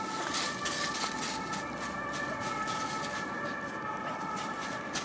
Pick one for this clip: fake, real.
real